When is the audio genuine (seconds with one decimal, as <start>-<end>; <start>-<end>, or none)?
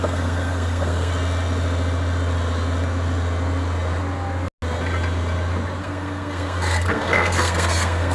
1.1-5.8